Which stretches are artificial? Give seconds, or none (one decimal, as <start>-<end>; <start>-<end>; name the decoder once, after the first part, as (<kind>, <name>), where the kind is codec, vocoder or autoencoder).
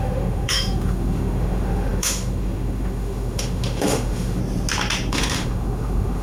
0.0-4.4 (autoencoder, DAC-VAE); 5.1-6.2